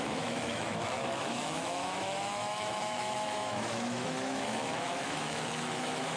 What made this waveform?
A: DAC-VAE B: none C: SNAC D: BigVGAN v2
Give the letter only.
A